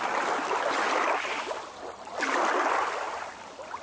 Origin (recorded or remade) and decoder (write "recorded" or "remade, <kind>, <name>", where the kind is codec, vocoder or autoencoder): remade, vocoder, BigVGAN v2